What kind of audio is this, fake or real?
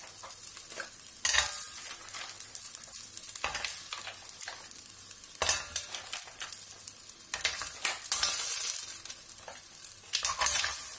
real